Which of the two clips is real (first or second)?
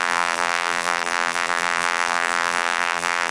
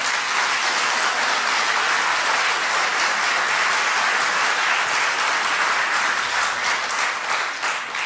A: second